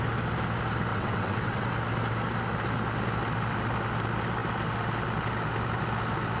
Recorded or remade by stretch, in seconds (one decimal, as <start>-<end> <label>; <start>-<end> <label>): 0.0-0.9 recorded; 0.9-1.7 remade; 1.7-6.4 recorded